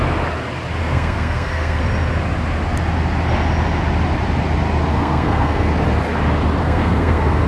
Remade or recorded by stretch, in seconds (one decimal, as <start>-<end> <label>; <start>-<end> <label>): 0.0-0.8 recorded; 0.8-1.8 remade; 1.8-4.9 recorded; 4.9-5.7 remade; 5.7-6.6 recorded; 6.6-7.5 remade

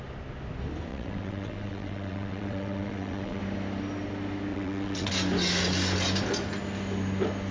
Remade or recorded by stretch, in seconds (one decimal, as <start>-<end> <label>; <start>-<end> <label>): 0.0-0.9 recorded; 0.9-3.4 remade; 3.4-4.5 recorded; 4.5-5.1 remade; 5.1-7.5 recorded

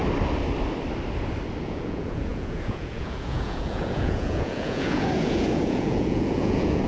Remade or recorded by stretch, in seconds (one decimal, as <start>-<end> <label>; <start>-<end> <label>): 0.0-1.6 recorded; 1.6-6.9 remade